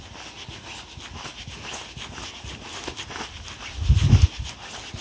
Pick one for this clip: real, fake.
real